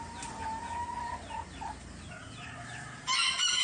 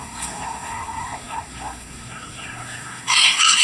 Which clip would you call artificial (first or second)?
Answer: second